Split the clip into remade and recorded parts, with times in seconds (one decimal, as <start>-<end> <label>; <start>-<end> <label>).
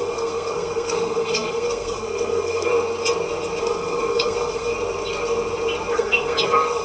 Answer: 0.0-2.7 remade; 2.7-3.6 recorded; 3.6-4.7 remade; 4.7-5.9 recorded; 5.9-6.8 remade